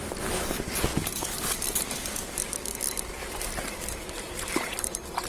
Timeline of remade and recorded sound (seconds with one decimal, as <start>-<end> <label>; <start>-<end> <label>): 0.0-5.3 recorded